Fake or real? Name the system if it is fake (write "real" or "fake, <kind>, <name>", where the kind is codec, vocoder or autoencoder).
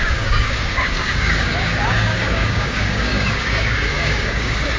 fake, codec, DAC